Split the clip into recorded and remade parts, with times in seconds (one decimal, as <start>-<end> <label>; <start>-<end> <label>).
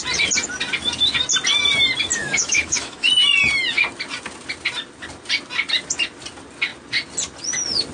0.0-2.2 recorded; 2.2-3.1 remade; 3.1-7.9 recorded